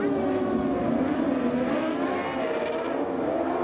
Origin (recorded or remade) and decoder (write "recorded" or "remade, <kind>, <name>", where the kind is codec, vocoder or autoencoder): recorded